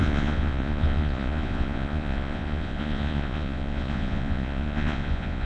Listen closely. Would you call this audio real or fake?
fake